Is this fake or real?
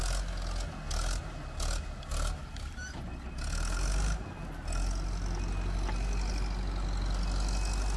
real